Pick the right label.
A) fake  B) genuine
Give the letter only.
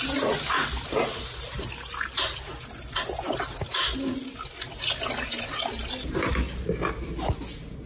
B